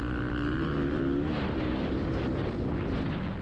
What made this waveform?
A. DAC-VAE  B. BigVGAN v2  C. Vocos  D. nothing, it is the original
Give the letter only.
D